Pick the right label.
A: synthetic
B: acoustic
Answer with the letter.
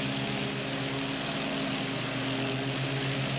B